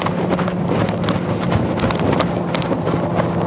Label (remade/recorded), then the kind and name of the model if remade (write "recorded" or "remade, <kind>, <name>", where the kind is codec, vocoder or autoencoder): recorded